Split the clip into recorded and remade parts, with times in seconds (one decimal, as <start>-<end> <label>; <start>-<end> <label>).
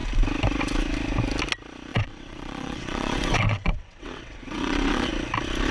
0.0-1.9 recorded; 1.9-5.1 remade; 5.1-5.7 recorded